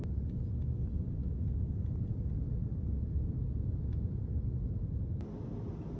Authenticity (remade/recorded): recorded